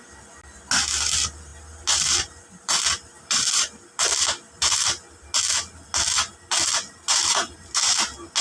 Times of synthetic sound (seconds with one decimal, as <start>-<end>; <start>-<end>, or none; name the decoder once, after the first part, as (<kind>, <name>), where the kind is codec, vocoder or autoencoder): 7.1-7.7 (vocoder, BigVGAN v2)